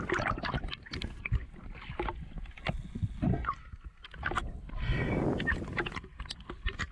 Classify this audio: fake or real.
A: real